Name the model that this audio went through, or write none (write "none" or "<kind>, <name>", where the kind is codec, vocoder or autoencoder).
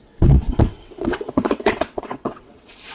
vocoder, WaveNeXt